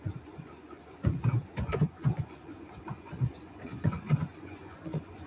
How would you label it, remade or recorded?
remade